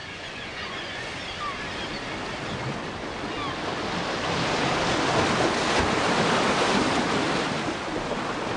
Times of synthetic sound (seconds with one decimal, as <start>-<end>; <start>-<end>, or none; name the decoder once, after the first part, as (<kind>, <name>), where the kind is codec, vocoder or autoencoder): 0.0-1.1 (vocoder, Vocos)